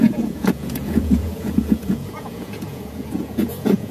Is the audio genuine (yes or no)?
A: no